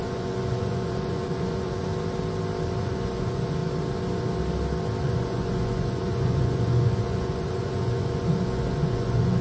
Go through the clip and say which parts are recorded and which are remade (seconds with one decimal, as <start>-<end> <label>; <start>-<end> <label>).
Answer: 0.0-1.9 remade; 1.9-2.8 recorded; 2.8-3.6 remade; 3.6-5.0 recorded; 5.0-9.4 remade